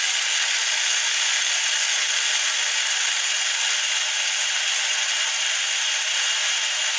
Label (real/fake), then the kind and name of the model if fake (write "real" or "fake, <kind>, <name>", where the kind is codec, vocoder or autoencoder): real